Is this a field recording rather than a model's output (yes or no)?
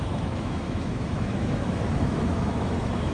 no